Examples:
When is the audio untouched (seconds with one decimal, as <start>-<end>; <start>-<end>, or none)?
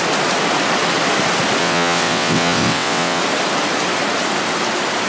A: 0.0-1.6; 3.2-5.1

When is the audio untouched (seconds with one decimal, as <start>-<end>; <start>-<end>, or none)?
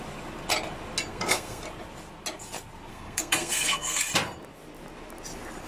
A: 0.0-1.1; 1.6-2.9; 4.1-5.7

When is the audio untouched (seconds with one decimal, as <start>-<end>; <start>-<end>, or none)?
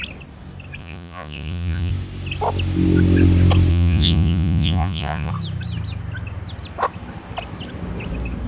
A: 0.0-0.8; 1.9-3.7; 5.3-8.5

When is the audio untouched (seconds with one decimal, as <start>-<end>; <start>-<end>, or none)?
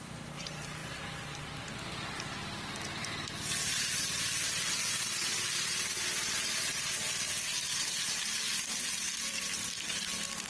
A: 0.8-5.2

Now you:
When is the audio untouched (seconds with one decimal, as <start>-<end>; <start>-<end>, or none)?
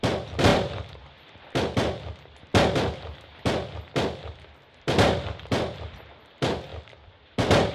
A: 0.0-0.5; 1.4-6.7